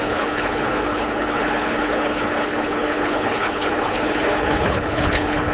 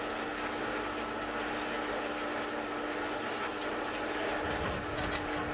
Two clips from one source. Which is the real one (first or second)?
second